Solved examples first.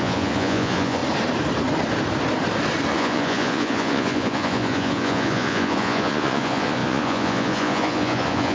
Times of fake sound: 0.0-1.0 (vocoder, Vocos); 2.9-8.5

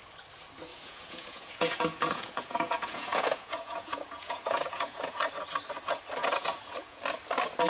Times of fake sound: 0.7-5.3 (vocoder, Vocos); 6.2-7.0

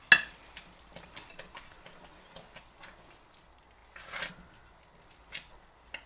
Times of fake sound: none

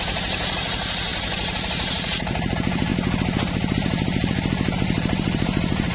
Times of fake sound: 0.0-2.9 (vocoder, BigVGAN v2); 3.5-5.9

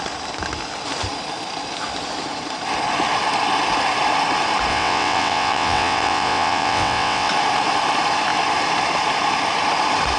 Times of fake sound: 4.7-7.3 (vocoder, WaveNeXt)

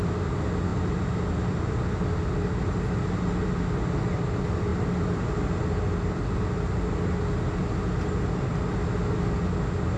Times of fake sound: none

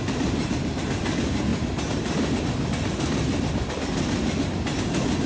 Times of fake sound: none

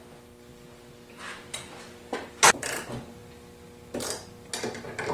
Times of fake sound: none